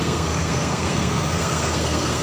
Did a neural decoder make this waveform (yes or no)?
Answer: yes